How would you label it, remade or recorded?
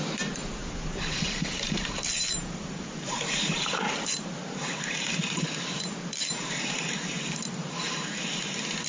remade